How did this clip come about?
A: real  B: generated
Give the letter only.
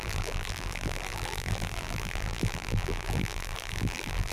B